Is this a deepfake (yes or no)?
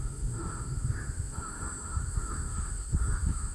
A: yes